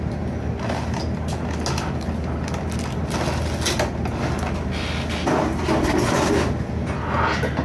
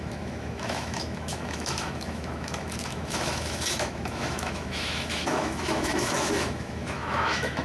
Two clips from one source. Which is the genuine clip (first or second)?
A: first